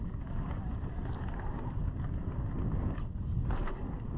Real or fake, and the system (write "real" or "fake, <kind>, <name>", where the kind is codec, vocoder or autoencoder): real